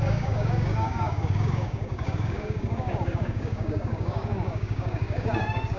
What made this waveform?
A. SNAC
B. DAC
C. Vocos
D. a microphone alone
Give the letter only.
B